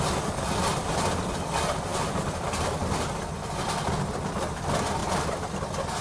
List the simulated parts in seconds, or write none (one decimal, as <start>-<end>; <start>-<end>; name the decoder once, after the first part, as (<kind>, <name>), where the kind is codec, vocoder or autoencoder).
1.9-3.0 (vocoder, BigVGAN v2)